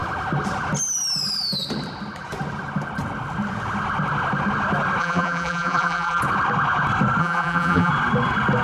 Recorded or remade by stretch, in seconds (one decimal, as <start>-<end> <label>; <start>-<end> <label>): 0.0-5.0 recorded; 5.0-6.2 remade; 6.2-7.2 recorded; 7.2-7.9 remade; 7.9-8.6 recorded